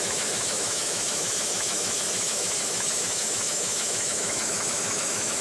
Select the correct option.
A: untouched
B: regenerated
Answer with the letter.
B